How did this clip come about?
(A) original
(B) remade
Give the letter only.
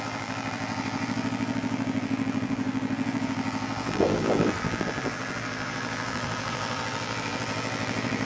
B